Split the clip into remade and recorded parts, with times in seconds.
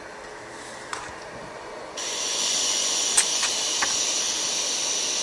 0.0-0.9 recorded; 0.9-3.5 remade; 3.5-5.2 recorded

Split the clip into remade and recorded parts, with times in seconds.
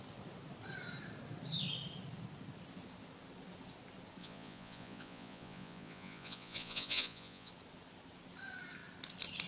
0.0-4.2 recorded; 4.2-7.5 remade; 7.5-9.5 recorded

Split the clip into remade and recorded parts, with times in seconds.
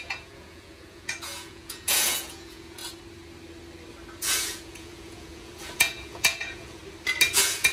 0.0-2.8 remade; 2.8-4.2 recorded; 4.2-6.8 remade; 6.8-7.3 recorded; 7.3-7.7 remade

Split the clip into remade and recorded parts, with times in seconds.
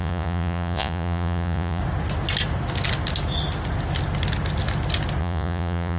0.0-1.8 remade; 1.8-5.2 recorded; 5.2-6.0 remade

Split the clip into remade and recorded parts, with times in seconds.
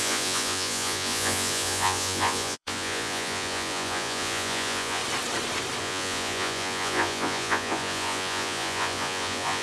0.0-5.0 remade; 5.0-5.8 recorded; 5.8-9.6 remade